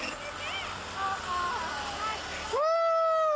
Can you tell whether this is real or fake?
real